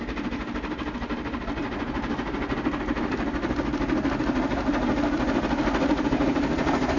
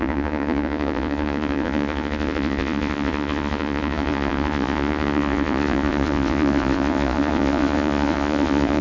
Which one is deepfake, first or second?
second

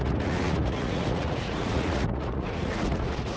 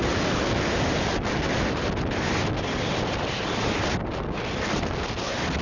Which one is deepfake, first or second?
first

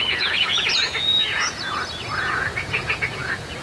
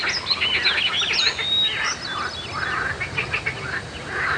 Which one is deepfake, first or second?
first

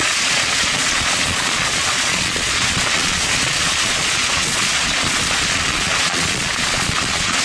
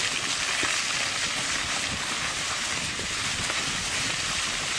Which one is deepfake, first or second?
first